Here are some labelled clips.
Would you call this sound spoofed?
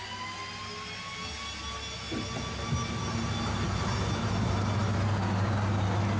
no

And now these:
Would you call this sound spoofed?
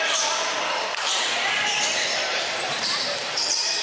yes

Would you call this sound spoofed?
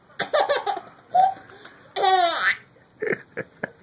no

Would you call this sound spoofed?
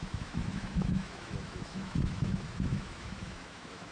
yes